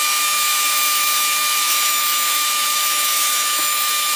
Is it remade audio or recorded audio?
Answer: remade